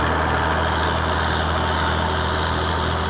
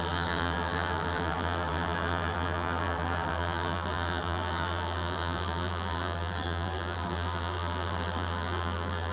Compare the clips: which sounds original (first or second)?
first